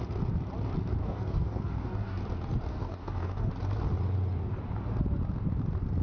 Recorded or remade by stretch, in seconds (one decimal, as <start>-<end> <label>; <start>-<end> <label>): 0.0-1.0 recorded; 1.0-2.2 remade; 2.2-2.7 recorded; 2.7-3.5 remade; 3.5-6.0 recorded